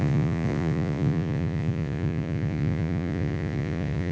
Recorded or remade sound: remade